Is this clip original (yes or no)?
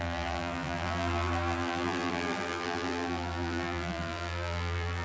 no